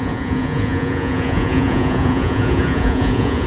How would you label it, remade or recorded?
remade